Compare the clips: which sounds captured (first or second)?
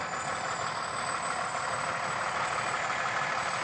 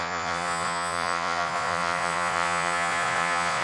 first